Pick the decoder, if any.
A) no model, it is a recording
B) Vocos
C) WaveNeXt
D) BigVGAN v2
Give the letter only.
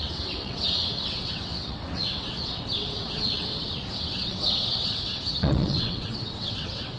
C